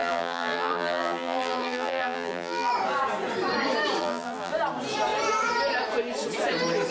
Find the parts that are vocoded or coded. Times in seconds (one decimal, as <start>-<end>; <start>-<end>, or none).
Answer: 0.0-2.7; 4.0-4.5